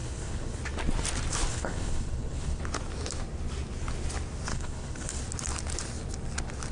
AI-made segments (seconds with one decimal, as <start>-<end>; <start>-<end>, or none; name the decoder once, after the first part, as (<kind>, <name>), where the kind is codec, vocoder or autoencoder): 0.0-0.6 (codec, HILCodec); 1.5-2.6; 4.5-5.2